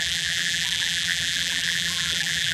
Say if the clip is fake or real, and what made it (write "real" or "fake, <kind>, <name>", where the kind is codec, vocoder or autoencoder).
fake, vocoder, BigVGAN v2